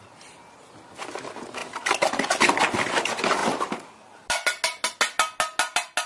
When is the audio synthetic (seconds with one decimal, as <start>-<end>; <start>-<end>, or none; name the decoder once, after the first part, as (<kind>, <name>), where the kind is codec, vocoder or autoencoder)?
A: none